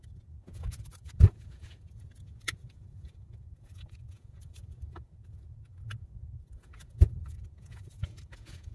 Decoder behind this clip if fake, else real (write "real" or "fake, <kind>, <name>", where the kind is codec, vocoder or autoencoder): fake, vocoder, Vocos